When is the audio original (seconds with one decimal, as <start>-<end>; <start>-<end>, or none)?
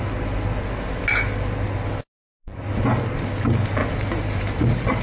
0.0-3.8